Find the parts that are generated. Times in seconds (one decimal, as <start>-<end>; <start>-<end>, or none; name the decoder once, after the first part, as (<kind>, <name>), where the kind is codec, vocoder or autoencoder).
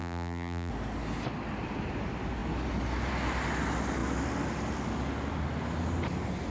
0.0-0.7 (vocoder, BigVGAN v2)